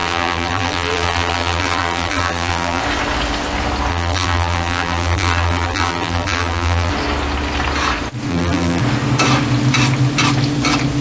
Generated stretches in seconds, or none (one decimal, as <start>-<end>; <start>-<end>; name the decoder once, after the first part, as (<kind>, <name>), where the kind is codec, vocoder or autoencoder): 0.0-2.8 (vocoder, BigVGAN v2); 3.9-6.9; 8.3-8.8